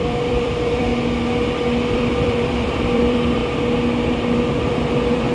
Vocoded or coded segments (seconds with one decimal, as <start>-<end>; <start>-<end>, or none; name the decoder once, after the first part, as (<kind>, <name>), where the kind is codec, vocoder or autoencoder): 0.0-0.9 (vocoder, BigVGAN v2); 1.9-3.4; 4.6-5.3